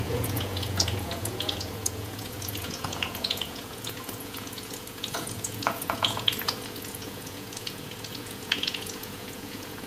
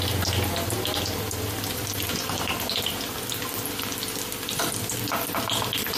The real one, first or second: second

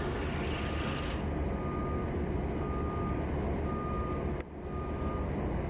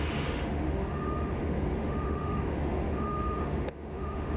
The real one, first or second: first